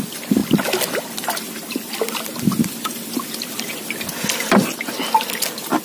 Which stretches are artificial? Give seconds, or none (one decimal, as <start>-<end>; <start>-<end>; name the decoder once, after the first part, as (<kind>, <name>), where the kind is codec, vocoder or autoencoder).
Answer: none